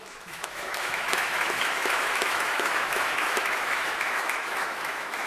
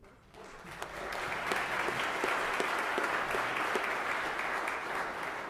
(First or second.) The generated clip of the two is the first